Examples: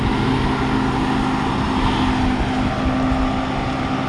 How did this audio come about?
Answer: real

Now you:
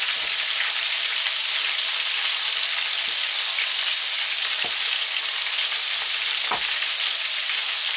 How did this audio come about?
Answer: real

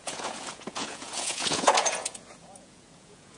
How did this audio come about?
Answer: fake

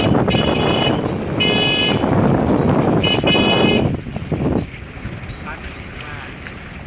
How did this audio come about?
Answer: real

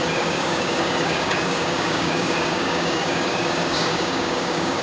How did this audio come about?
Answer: fake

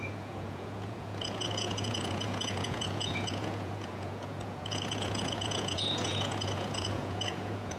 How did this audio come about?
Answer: fake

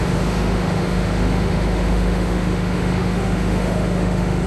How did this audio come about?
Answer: fake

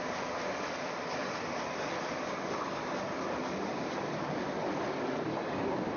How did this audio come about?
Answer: fake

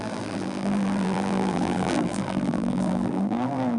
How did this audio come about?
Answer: fake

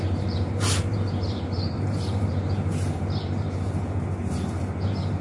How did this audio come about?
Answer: fake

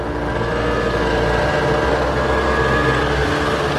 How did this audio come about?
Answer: real